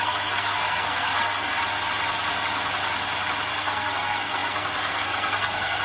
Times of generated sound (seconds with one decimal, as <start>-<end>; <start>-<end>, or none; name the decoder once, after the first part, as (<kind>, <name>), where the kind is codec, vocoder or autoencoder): 0.0-1.6 (codec, SNAC); 3.5-5.8